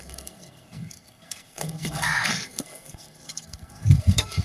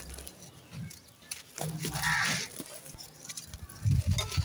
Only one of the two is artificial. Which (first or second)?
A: first